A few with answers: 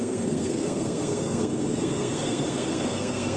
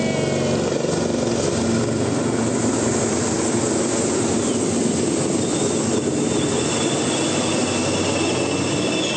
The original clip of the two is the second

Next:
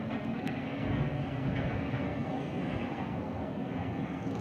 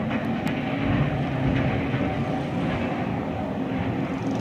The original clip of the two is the second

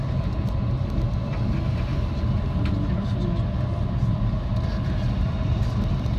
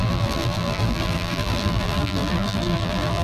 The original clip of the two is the first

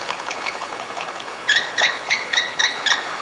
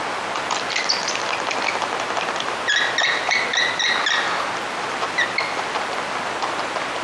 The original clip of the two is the second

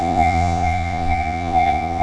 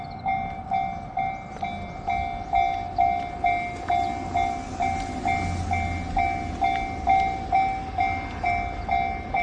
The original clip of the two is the second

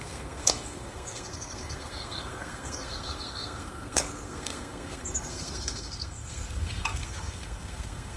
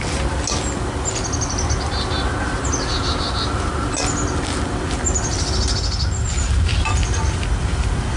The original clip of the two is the second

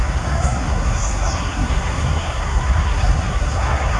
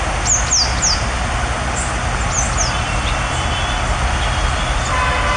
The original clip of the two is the second